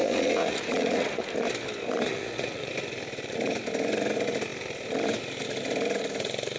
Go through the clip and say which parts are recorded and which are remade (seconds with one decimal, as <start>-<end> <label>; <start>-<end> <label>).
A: 0.0-1.3 remade; 1.3-2.1 recorded; 2.1-2.7 remade; 2.7-6.6 recorded